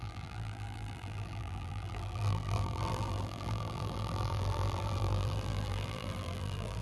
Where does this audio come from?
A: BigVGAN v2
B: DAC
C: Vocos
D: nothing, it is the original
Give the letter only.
A